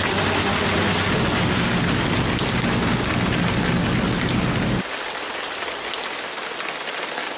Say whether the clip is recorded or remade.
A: recorded